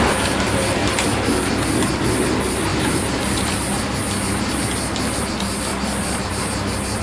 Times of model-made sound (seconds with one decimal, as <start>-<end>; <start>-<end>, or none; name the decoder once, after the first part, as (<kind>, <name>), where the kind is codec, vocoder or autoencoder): 2.7-3.6 (vocoder, BigVGAN v2)